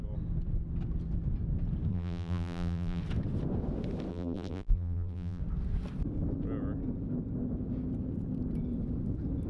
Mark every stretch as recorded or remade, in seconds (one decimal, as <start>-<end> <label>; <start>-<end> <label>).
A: 0.0-1.9 recorded; 1.9-3.0 remade; 3.0-4.1 recorded; 4.1-5.4 remade; 5.4-9.5 recorded